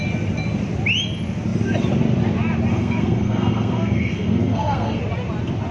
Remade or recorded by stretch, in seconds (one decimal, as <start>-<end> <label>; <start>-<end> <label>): 0.0-2.7 recorded; 2.7-5.0 remade; 5.0-5.7 recorded